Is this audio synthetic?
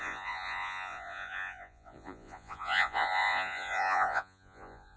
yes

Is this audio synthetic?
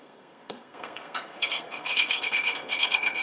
yes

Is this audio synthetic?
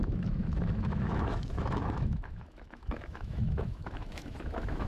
yes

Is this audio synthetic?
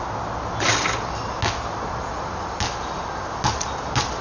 no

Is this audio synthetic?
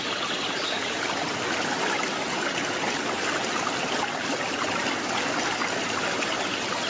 no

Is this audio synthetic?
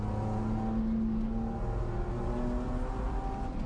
no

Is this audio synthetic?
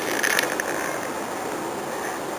no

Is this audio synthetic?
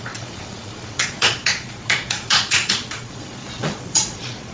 yes